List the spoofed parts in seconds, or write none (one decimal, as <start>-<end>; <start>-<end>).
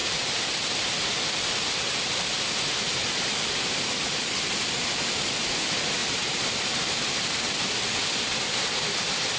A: 0.0-0.9; 6.0-7.9